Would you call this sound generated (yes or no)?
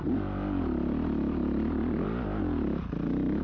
no